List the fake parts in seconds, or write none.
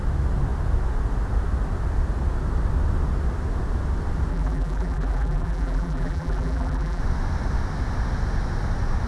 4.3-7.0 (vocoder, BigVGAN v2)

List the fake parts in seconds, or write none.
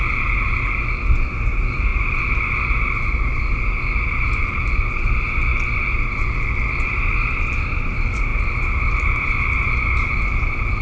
0.0-5.5 (vocoder, BigVGAN v2); 6.1-10.8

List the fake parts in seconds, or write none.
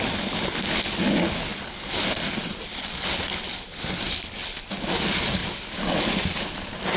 1.5-4.6 (vocoder, BigVGAN v2); 5.4-6.4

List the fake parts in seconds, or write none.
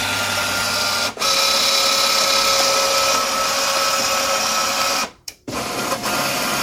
5.0-5.9 (vocoder, BigVGAN v2)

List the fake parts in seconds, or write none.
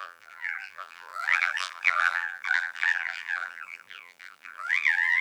0.0-5.2 (vocoder, BigVGAN v2)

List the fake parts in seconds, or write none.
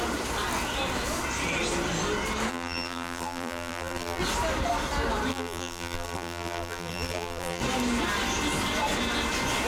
2.5-4.2 (vocoder, BigVGAN v2); 5.3-7.6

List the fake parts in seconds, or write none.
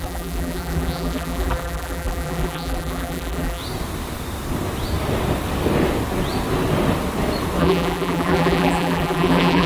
0.0-3.6 (vocoder, BigVGAN v2); 7.6-9.7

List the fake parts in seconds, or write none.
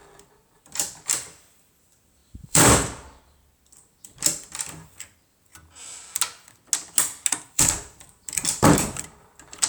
0.0-5.5 (vocoder, BigVGAN v2); 7.3-9.7